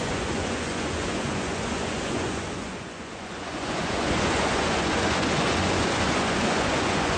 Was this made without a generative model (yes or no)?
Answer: no